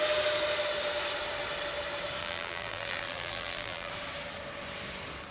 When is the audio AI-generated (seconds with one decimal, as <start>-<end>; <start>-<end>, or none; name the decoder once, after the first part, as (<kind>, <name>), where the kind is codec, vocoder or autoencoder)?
2.2-3.9 (vocoder, BigVGAN v2)

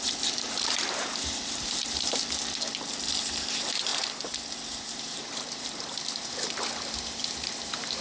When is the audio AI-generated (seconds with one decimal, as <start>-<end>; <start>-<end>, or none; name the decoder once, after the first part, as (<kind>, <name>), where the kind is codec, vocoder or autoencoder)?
0.0-2.2 (vocoder, BigVGAN v2); 3.2-8.0

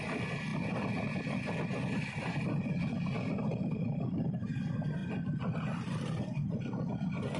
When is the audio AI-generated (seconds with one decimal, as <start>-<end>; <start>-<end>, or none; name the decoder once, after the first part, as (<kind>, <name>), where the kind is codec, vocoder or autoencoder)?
3.5-4.2 (vocoder, BigVGAN v2); 5.0-6.9